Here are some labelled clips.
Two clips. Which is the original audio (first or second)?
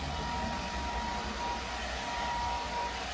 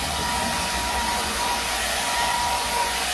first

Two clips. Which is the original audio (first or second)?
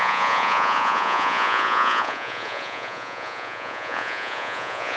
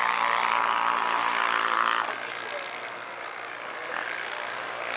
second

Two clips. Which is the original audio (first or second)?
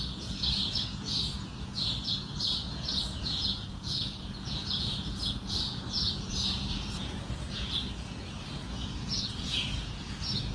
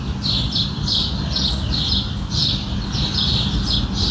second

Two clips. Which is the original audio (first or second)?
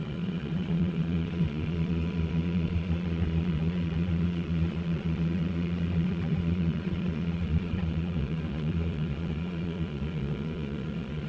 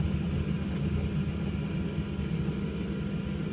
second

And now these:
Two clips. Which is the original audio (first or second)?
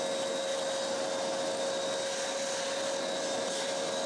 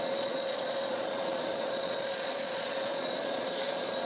first